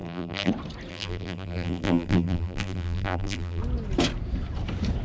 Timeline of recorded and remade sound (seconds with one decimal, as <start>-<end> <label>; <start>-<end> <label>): 0.0-0.5 remade; 0.5-0.9 recorded; 0.9-3.6 remade; 3.6-5.0 recorded